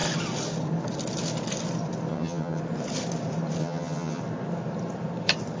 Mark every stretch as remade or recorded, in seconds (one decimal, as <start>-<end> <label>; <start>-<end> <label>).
0.0-2.1 recorded; 2.1-2.6 remade; 2.6-3.6 recorded; 3.6-4.2 remade; 4.2-5.6 recorded